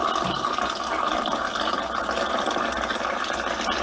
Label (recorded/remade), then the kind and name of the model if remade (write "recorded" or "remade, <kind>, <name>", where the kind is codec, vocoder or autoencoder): recorded